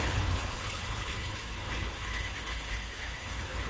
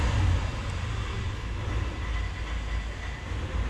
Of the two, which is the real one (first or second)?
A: second